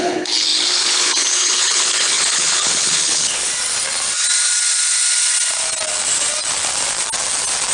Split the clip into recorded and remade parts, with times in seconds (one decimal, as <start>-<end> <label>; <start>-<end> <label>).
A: 0.0-3.5 remade; 3.5-7.7 recorded